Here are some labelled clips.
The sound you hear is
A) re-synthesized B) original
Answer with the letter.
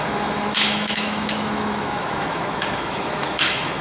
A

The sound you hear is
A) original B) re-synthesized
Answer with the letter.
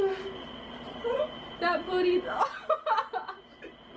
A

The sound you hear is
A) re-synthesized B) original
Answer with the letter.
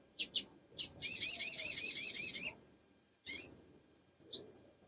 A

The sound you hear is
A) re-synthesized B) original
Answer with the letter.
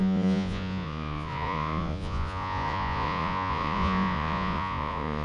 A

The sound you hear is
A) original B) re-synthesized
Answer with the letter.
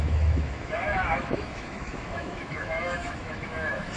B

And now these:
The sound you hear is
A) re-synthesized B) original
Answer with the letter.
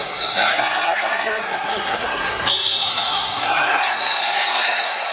A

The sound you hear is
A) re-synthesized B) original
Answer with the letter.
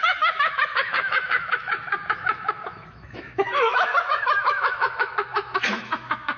A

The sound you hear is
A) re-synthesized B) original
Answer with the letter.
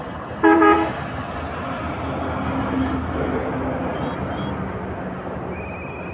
B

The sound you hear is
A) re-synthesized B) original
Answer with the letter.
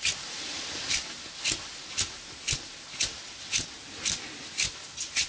B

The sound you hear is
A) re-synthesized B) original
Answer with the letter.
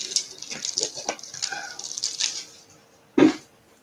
B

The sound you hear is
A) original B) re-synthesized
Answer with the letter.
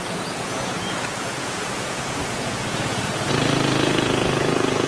B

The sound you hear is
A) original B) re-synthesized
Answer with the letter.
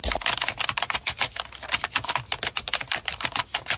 A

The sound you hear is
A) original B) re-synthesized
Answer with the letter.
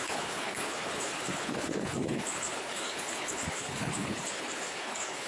B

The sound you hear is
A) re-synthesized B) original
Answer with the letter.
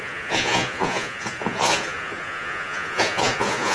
A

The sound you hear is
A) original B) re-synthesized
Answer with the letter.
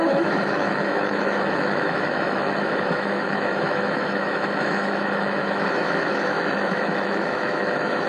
B